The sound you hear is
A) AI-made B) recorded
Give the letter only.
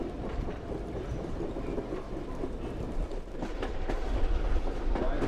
B